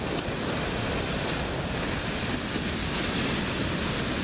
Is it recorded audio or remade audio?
recorded